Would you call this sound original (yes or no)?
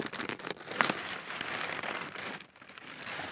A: yes